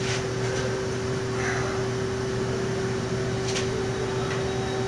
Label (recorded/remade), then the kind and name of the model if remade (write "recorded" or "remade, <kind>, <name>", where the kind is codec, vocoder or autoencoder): recorded